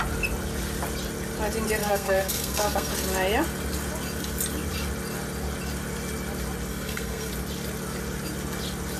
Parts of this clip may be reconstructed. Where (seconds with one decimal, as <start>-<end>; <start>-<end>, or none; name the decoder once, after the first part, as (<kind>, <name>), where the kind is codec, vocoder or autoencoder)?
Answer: 1.8-2.9 (codec, SNAC); 6.7-7.3